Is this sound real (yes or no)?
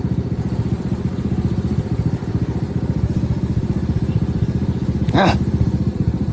no